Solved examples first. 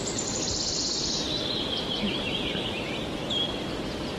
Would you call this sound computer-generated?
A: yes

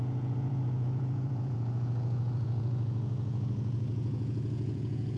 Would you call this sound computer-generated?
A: yes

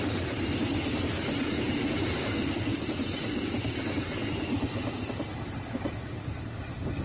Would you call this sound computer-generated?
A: yes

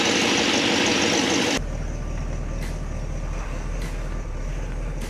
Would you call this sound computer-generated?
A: no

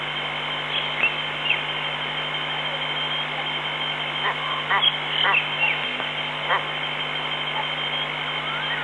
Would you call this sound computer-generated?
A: no